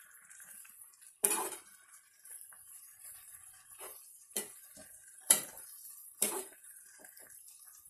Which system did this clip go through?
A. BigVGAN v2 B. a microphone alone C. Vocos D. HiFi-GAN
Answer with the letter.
A